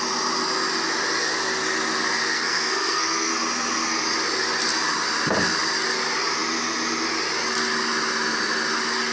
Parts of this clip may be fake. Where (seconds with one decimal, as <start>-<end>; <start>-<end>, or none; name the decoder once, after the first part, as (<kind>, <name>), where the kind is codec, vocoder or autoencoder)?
2.2-3.3 (codec, SNAC)